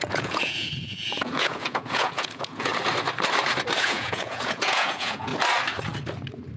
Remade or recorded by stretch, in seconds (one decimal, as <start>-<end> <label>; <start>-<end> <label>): 0.0-2.7 remade; 2.7-3.8 recorded; 3.8-5.3 remade; 5.3-6.6 recorded